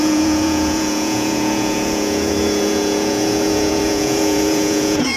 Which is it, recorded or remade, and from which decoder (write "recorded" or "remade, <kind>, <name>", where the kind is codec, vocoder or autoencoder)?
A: remade, vocoder, Vocos